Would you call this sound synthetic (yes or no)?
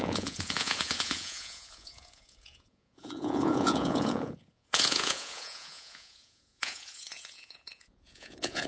yes